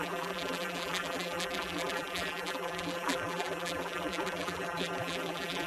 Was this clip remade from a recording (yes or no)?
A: yes